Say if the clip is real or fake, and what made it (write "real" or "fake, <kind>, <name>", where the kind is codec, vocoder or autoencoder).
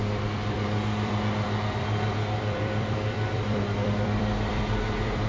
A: fake, vocoder, BigVGAN v2